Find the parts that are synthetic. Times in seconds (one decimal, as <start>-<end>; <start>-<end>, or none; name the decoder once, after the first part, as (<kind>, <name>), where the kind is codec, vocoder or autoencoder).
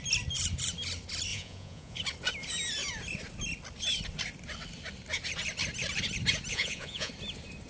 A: 1.3-2.0 (vocoder, Vocos); 6.5-7.1